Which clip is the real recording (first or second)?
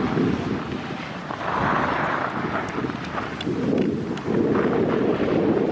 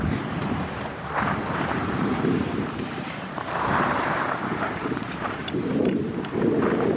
first